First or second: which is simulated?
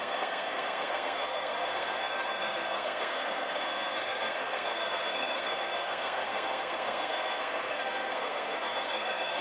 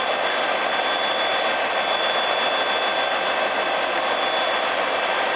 first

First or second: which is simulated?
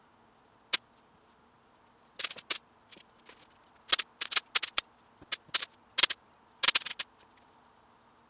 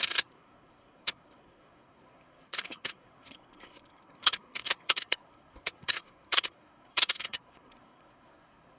second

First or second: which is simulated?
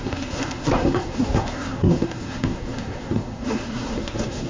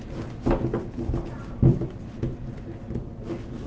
first